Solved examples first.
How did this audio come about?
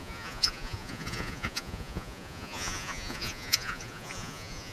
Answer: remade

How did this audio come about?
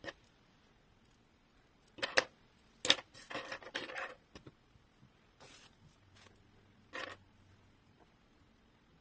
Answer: recorded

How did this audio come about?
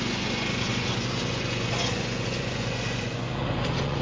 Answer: remade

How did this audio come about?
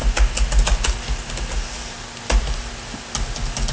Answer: recorded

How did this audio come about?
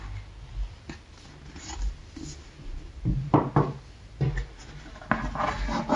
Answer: recorded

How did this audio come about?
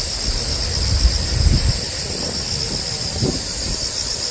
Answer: recorded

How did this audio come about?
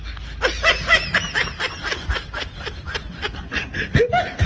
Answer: recorded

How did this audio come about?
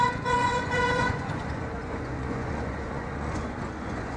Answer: remade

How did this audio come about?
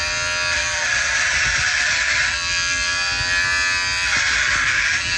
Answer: recorded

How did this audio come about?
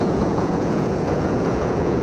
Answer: remade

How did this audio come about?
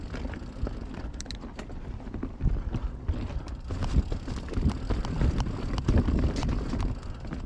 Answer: recorded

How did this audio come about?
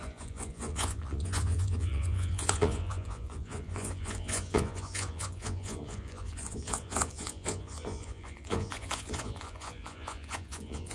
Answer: remade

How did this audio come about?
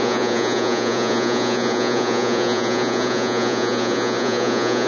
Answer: remade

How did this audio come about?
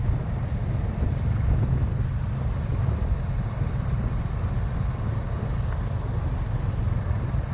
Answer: recorded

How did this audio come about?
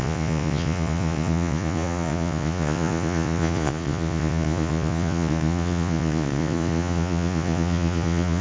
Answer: remade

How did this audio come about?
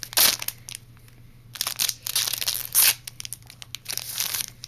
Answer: recorded